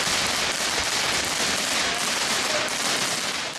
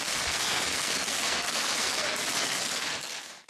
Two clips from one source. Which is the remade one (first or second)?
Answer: second